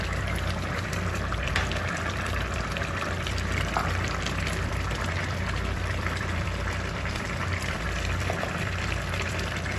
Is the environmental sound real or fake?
fake